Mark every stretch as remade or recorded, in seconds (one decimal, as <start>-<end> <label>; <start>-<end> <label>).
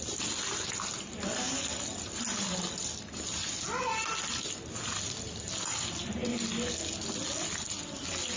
0.0-8.4 recorded